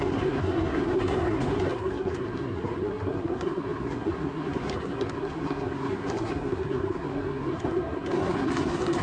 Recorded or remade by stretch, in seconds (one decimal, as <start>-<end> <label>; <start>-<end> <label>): 0.0-9.0 remade